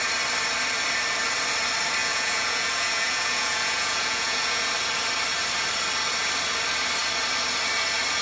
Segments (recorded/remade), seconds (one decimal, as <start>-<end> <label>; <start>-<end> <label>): 0.0-2.0 recorded; 2.0-4.7 remade; 4.7-8.2 recorded